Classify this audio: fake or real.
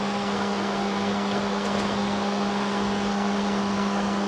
fake